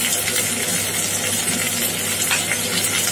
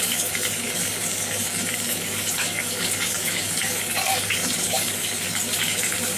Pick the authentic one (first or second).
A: first